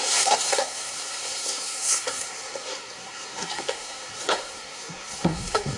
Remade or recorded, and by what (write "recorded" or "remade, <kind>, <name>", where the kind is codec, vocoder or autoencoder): remade, codec, SNAC